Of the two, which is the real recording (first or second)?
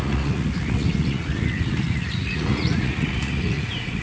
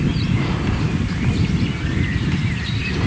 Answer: second